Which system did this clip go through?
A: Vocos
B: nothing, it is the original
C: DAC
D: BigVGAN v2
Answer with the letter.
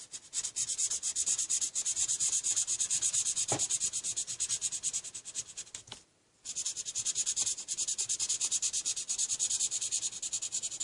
B